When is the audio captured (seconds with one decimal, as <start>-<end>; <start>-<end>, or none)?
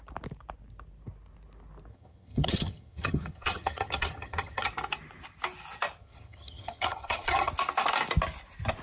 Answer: 0.0-1.9; 4.7-6.0; 7.5-8.8